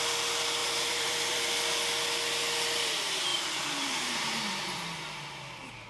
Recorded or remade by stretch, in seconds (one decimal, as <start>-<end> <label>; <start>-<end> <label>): 0.0-0.6 recorded; 0.6-1.4 remade; 1.4-3.3 recorded; 3.3-4.8 remade; 4.8-5.9 recorded